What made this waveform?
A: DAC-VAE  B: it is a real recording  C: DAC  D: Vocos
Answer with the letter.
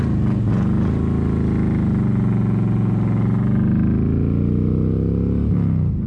B